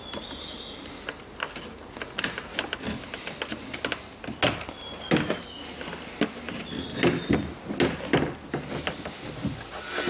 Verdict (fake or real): real